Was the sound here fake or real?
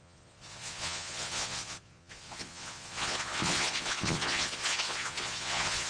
fake